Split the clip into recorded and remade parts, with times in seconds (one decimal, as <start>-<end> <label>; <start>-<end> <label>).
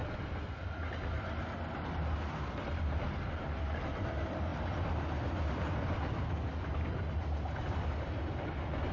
0.0-4.0 remade; 4.0-8.9 recorded